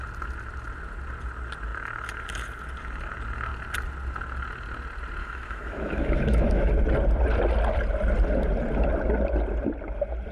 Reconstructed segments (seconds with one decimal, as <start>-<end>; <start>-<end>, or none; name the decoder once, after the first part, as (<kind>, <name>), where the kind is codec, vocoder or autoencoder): 5.2-6.7 (autoencoder, DAC-VAE)